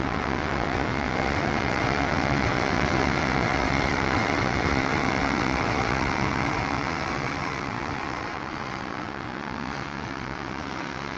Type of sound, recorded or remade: remade